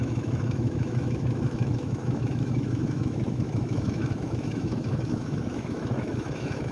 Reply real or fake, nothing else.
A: fake